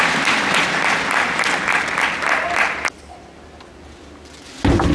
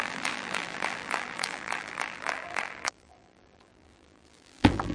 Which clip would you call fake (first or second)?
second